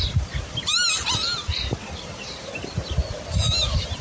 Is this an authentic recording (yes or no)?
yes